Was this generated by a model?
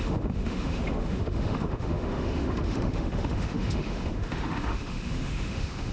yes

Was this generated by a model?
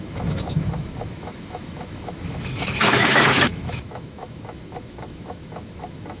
yes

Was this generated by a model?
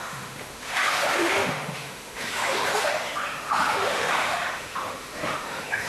yes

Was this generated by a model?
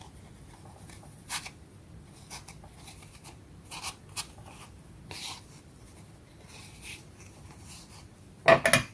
no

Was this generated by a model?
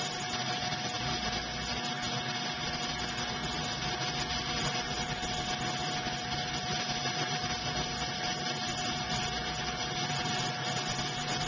no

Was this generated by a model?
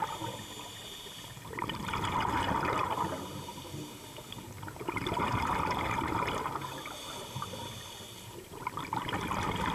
no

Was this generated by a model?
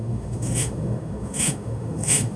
yes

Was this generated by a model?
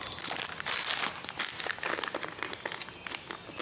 no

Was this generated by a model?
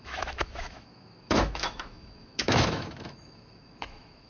yes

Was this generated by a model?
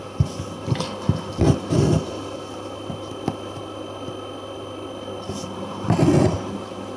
no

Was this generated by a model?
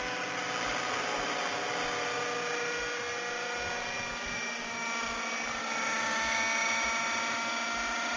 no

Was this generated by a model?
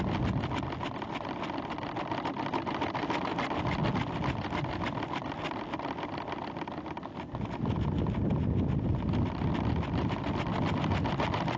no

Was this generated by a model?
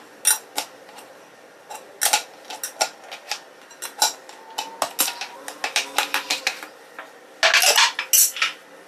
no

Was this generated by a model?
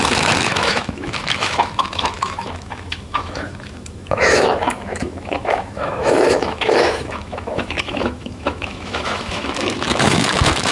yes